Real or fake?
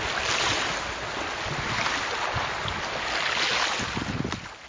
real